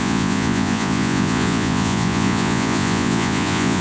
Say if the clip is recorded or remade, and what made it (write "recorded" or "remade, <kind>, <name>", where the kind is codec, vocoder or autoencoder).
remade, vocoder, Vocos